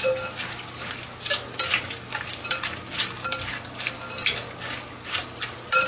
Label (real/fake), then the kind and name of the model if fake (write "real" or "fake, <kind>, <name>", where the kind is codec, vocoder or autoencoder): real